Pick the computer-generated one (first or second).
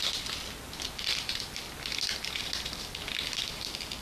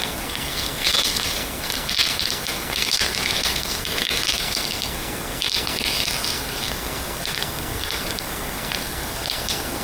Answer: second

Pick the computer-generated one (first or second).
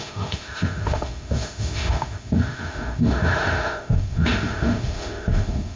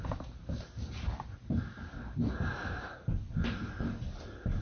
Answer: first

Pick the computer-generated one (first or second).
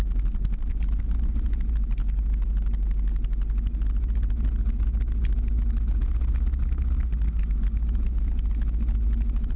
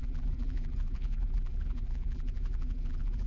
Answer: second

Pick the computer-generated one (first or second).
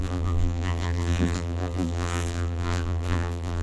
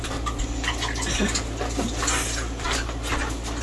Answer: first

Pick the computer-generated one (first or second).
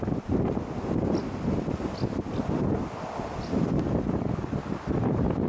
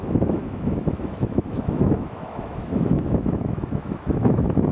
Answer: second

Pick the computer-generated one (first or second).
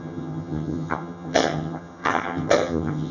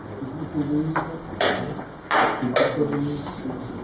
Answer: first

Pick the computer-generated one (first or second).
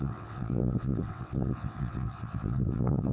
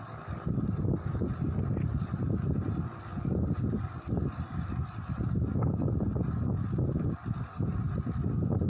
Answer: first